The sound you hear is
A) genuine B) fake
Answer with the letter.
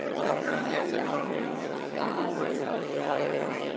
B